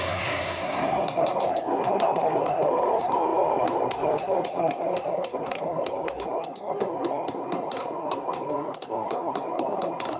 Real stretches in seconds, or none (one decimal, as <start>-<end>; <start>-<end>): none